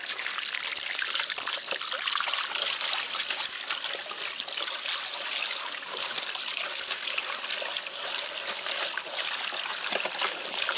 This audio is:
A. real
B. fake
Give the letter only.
A